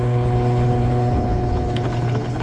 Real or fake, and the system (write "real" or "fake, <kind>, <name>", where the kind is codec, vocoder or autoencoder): fake, codec, HILCodec